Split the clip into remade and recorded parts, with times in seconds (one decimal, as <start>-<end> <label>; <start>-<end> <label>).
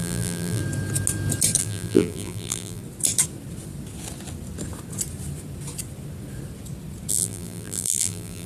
0.0-0.6 remade; 0.6-1.6 recorded; 1.6-2.8 remade; 2.8-7.1 recorded; 7.1-8.5 remade